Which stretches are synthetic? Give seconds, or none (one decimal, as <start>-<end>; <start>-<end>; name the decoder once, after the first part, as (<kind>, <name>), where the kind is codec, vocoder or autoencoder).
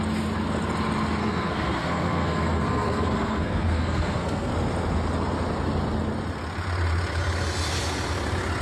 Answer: 1.2-4.5 (codec, SNAC)